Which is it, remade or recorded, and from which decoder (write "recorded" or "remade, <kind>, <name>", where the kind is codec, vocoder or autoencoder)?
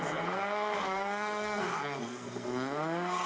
remade, codec, SNAC